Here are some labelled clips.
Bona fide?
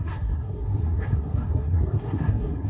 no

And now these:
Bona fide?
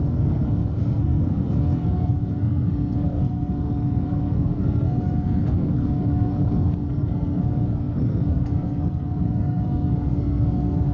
no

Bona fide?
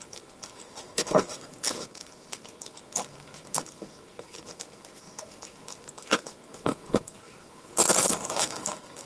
no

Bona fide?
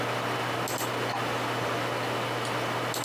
yes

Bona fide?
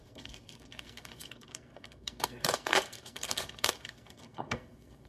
no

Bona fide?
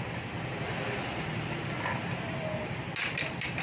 yes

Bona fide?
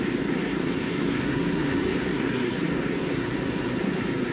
no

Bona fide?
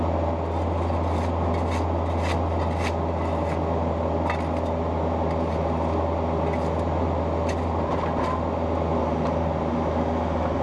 yes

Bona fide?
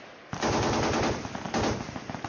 yes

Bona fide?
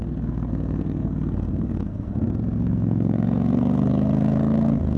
no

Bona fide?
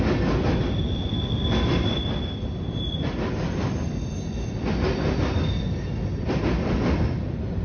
yes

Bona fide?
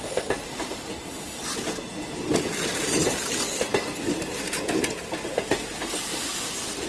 yes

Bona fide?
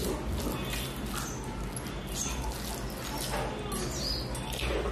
yes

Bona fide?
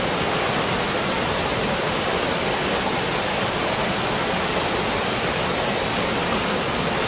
yes